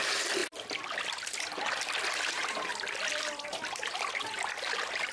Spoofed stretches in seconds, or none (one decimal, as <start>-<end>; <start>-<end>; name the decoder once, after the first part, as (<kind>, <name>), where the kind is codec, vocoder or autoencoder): none